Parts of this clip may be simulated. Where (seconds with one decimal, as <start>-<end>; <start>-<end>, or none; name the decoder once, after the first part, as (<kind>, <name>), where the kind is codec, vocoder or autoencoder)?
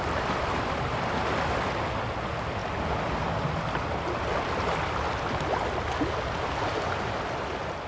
none